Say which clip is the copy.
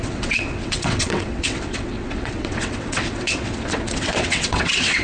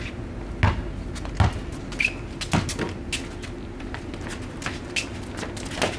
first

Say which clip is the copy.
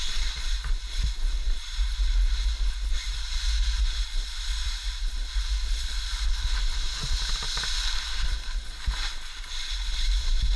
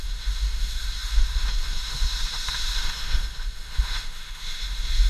second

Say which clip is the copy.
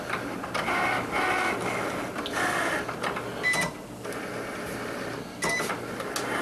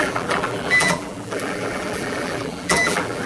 second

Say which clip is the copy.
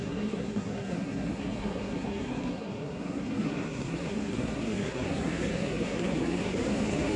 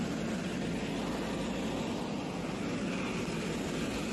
first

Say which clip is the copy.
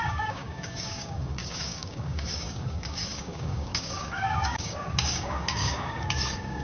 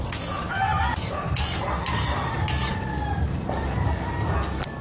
first